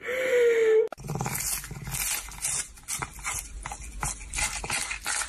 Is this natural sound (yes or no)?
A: yes